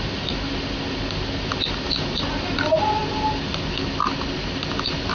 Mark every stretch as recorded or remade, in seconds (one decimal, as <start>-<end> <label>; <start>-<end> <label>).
0.0-5.1 recorded